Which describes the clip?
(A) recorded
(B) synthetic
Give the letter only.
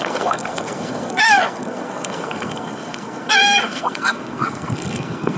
B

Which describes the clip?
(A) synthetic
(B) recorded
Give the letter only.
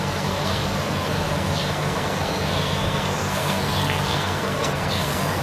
A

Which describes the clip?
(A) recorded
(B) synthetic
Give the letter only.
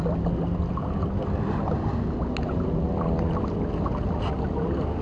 A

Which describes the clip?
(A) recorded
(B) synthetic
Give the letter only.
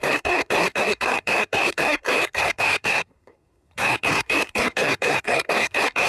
B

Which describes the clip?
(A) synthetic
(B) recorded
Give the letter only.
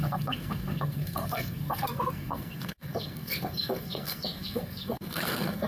A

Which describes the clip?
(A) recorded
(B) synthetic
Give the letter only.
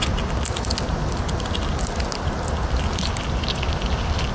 A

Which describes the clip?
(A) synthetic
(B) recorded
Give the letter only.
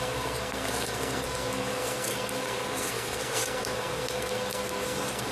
A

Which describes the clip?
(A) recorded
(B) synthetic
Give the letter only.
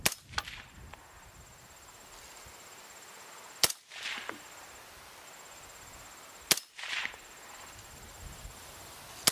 A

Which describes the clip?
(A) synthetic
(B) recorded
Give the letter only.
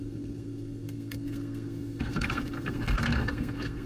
A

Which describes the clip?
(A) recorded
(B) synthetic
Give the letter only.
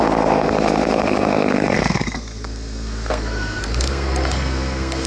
B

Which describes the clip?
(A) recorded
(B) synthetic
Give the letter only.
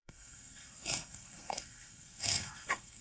B